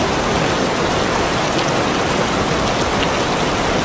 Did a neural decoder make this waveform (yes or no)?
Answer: no